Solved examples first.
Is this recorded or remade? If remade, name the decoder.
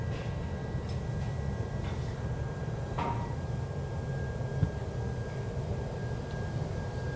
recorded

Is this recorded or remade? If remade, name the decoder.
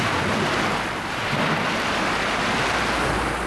recorded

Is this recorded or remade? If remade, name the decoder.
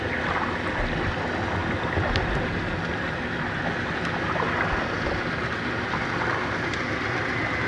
recorded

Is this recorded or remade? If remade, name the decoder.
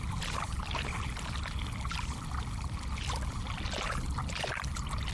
recorded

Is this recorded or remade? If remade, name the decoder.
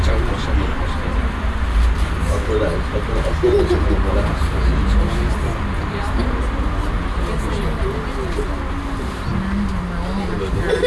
recorded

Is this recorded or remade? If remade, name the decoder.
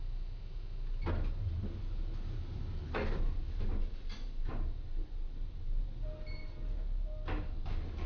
recorded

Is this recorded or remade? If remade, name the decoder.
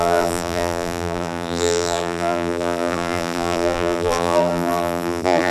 remade, vocoder, BigVGAN v2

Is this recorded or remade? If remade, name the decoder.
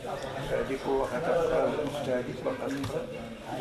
recorded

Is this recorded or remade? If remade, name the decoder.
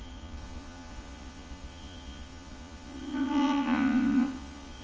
remade, vocoder, Vocos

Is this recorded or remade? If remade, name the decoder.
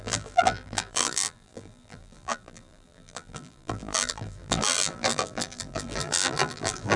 remade, vocoder, BigVGAN v2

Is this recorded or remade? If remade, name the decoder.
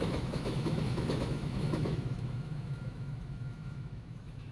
remade, autoencoder, DAC-VAE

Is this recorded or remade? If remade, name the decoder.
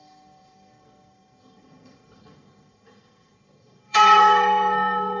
remade, codec, SNAC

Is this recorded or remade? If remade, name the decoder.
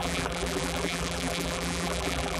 remade, vocoder, BigVGAN v2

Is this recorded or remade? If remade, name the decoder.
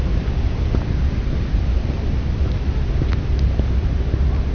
recorded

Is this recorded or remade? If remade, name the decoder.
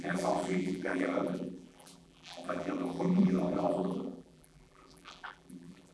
remade, vocoder, BigVGAN v2